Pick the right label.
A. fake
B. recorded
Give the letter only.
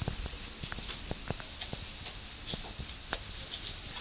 B